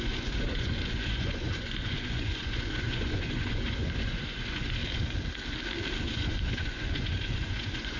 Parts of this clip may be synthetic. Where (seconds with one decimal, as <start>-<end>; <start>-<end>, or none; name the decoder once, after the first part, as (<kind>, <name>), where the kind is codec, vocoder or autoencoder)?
0.0-4.8 (vocoder, Vocos); 6.0-8.0